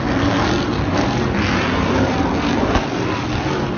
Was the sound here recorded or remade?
recorded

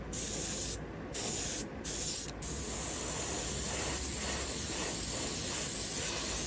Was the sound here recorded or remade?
recorded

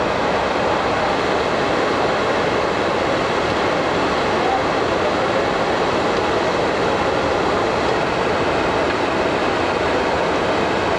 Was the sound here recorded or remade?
recorded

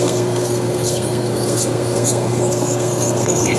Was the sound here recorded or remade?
remade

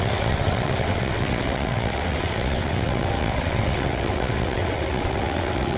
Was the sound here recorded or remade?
remade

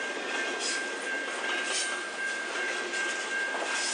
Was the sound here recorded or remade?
remade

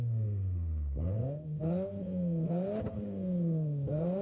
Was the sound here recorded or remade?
remade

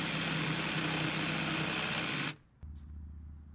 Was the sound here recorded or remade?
recorded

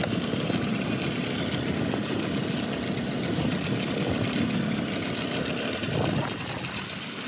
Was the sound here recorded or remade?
recorded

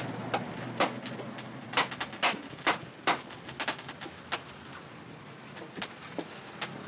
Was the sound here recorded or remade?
recorded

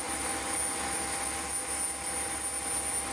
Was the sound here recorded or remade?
recorded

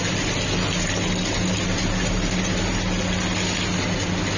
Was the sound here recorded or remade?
recorded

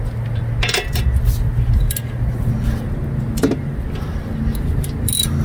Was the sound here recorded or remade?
recorded